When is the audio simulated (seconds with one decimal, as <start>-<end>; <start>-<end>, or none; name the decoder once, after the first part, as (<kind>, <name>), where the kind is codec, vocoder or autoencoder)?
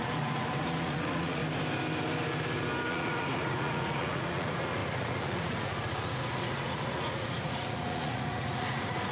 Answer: 0.0-1.4 (vocoder, Vocos); 2.9-9.1